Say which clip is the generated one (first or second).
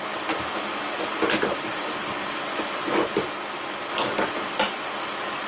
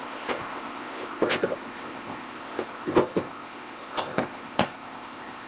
second